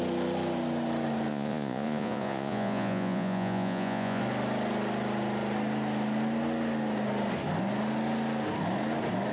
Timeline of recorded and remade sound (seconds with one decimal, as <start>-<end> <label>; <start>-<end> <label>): 0.0-1.3 recorded; 1.3-4.2 remade; 4.2-9.3 recorded